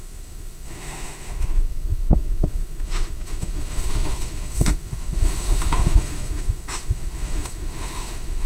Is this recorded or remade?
remade